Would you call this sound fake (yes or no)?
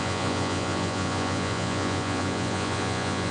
yes